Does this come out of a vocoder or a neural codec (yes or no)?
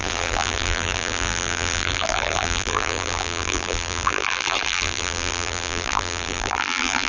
yes